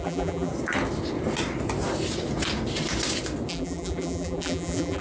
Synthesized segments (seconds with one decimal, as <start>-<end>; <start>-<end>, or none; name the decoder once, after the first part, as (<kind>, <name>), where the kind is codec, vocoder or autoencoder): 0.0-0.5 (vocoder, BigVGAN v2); 3.5-5.0